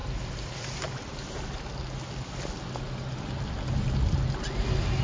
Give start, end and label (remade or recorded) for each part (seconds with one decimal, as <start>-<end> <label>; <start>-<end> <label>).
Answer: 0.0-5.0 recorded